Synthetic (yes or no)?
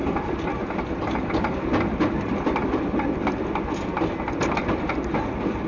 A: no